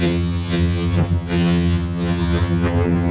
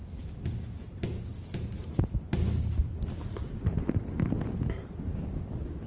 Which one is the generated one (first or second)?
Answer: first